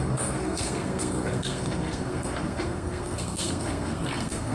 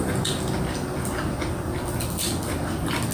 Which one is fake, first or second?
first